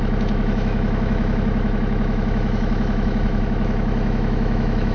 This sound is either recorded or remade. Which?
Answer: remade